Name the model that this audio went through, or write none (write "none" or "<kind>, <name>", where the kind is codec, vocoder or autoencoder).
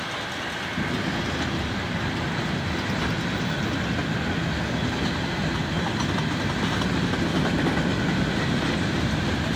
none